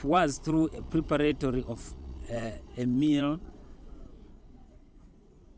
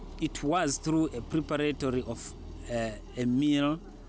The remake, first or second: first